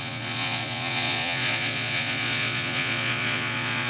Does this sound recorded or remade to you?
remade